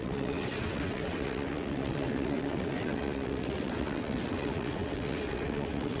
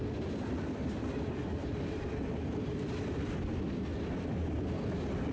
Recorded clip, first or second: second